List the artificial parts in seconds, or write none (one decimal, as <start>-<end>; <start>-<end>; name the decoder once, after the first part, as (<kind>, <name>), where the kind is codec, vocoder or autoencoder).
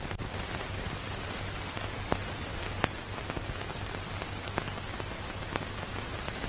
0.0-2.5 (vocoder, BigVGAN v2)